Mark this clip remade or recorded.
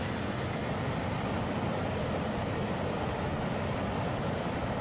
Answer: recorded